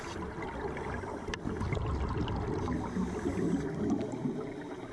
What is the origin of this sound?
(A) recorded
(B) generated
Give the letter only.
A